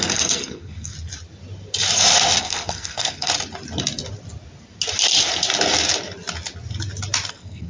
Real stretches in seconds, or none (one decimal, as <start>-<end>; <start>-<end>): 0.9-2.4; 3.3-7.3